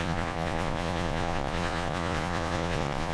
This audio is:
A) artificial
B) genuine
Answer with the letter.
A